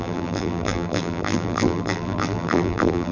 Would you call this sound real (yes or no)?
no